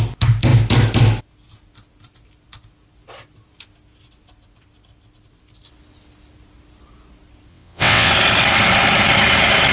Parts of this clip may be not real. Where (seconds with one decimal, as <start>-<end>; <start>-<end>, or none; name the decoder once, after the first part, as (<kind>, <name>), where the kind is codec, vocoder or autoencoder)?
7.5-8.1 (vocoder, WaveNeXt)

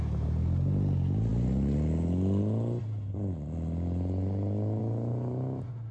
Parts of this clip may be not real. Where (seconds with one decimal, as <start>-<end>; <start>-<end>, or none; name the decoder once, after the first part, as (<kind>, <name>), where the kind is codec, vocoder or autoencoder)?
none

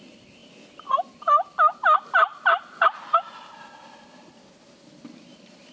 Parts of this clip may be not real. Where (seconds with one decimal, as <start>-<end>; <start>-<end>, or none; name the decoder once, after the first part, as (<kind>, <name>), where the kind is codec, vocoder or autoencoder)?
none

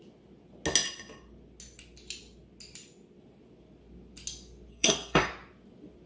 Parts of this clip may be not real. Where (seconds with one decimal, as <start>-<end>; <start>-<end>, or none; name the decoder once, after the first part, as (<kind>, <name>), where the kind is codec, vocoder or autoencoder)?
4.7-5.3 (codec, SNAC)

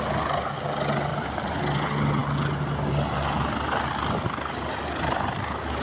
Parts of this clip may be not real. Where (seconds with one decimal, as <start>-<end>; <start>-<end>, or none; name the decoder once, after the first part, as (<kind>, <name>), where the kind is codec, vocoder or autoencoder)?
1.1-1.6 (vocoder, BigVGAN v2)

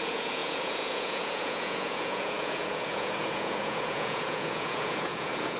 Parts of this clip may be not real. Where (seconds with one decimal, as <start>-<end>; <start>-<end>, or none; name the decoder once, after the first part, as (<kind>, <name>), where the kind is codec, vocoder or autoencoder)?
0.0-5.6 (vocoder, Vocos)

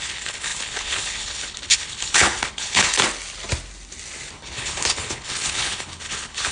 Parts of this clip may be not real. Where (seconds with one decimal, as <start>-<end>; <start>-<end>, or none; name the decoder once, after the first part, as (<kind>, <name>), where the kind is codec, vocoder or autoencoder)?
0.0-3.0 (codec, HILCodec); 4.3-6.5

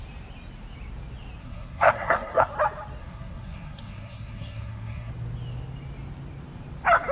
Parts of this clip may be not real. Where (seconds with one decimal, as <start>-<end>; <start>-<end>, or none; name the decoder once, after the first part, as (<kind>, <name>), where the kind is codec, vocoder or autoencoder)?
1.4-2.5 (codec, SNAC); 3.0-5.1